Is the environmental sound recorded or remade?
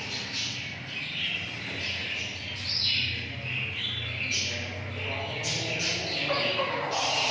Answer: recorded